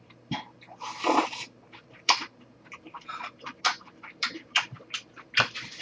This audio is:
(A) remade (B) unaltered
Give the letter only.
A